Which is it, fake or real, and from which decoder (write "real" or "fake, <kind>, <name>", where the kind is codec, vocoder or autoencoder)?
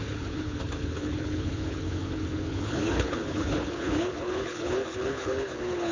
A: fake, codec, HILCodec